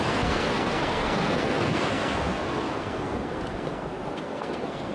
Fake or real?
fake